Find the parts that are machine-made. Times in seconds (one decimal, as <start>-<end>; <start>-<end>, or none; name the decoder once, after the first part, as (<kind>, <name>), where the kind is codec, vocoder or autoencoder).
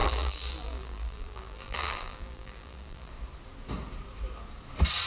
0.0-3.1 (vocoder, BigVGAN v2)